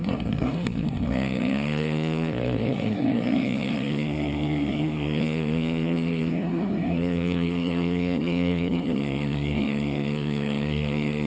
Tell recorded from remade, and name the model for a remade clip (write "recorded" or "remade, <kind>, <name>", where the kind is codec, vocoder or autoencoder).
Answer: remade, codec, SNAC